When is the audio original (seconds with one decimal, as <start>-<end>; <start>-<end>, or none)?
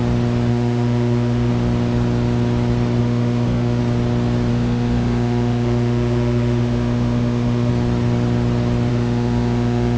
0.0-0.5; 1.5-3.0; 3.8-4.5; 7.7-8.9